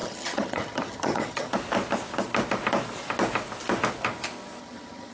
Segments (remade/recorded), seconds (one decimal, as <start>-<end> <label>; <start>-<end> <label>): 0.0-1.5 remade; 1.5-4.6 recorded; 4.6-5.1 remade